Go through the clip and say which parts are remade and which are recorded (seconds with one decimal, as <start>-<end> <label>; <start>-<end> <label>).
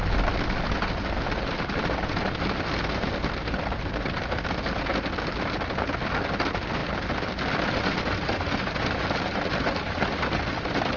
0.0-11.0 recorded